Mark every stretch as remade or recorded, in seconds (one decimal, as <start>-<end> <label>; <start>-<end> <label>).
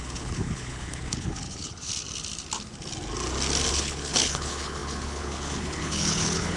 0.0-1.9 remade; 1.9-3.7 recorded; 3.7-6.6 remade